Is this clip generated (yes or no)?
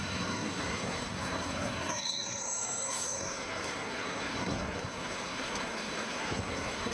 yes